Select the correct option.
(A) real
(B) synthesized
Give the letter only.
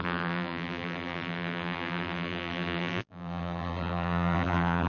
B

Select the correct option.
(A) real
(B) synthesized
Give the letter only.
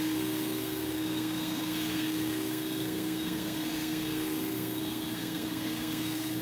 B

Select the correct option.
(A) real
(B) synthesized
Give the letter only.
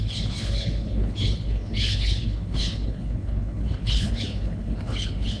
B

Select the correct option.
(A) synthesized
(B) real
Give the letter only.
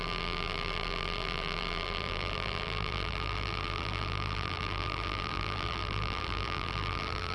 A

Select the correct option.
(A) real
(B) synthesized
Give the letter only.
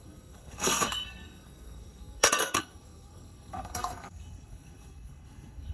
B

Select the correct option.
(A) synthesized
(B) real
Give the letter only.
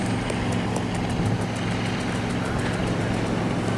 B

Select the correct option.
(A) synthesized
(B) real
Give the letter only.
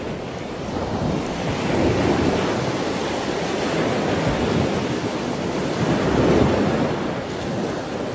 B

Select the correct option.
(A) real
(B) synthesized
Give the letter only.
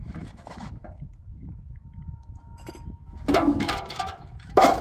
B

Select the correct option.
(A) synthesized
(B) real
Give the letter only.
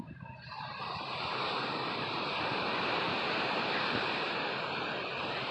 A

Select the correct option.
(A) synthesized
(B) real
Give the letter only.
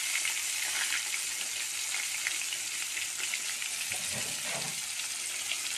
B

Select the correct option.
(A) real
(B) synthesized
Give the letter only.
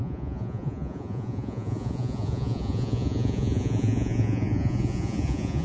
B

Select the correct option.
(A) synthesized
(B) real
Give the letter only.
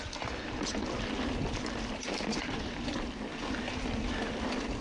B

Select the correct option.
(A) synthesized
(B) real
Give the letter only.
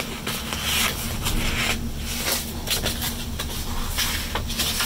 B